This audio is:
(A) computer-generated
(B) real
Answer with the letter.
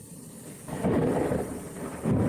B